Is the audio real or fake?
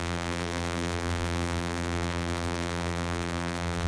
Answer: fake